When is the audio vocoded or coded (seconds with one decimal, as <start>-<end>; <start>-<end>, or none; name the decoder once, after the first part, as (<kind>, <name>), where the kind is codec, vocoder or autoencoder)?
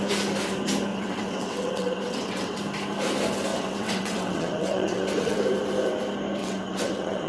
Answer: 0.9-2.6 (vocoder, WaveNeXt); 3.5-5.4; 6.4-7.3